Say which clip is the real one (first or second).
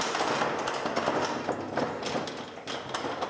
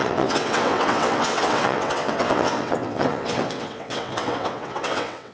first